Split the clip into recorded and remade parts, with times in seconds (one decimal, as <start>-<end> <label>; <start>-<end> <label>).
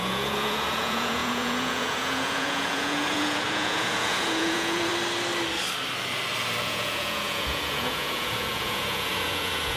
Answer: 0.0-4.9 remade; 4.9-6.6 recorded; 6.6-9.8 remade